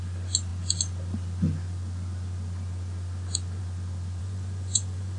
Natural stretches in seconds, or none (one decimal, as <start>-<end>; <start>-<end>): 0.0-4.2